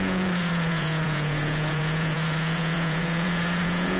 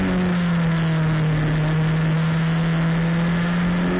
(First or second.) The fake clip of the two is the first